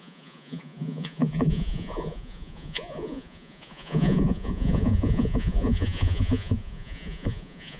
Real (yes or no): no